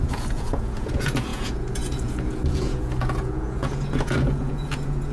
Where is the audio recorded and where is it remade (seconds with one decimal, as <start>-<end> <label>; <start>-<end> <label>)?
0.0-5.1 remade